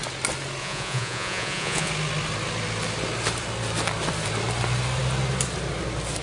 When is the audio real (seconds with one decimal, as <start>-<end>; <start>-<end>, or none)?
0.0-0.6; 1.9-6.2